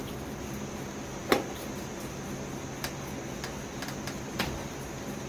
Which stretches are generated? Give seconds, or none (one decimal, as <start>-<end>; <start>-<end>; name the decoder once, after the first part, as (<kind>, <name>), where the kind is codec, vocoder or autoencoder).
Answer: none

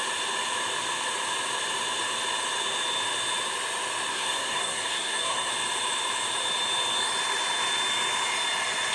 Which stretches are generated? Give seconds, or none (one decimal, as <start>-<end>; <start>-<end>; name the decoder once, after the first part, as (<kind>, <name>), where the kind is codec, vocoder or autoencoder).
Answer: 4.1-5.5 (codec, SNAC)

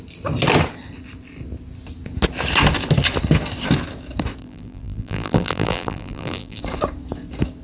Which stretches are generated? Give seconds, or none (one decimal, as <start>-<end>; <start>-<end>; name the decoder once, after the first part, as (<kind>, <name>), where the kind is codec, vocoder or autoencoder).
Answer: 4.4-6.6 (vocoder, BigVGAN v2)